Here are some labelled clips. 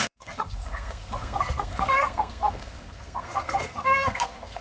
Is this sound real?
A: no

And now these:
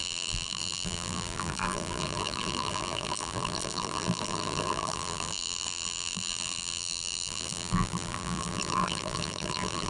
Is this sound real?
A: no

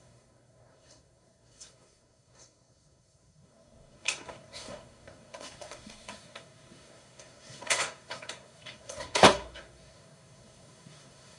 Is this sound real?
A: no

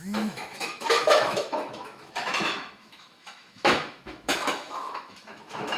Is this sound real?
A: no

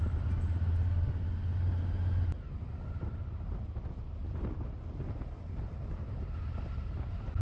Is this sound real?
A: yes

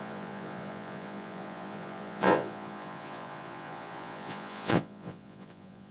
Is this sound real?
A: no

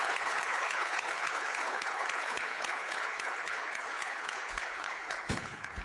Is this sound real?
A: no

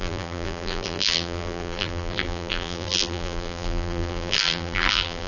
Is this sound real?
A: no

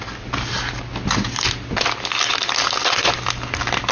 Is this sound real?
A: yes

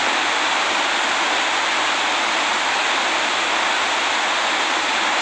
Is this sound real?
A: yes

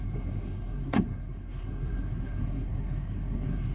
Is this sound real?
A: no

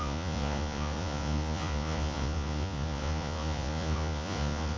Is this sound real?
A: no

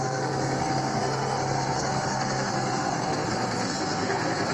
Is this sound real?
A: no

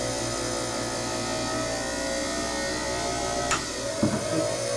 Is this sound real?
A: yes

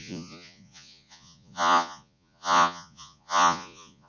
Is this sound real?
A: no